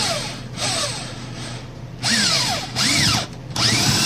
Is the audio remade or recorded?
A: remade